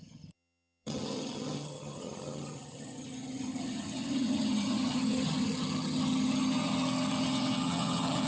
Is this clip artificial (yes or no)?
yes